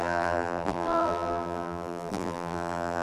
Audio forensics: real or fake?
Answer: fake